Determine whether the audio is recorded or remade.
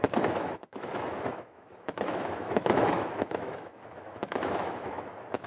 remade